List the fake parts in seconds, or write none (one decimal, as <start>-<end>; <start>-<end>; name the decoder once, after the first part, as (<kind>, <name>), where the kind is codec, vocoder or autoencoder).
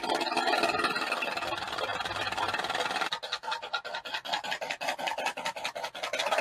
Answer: none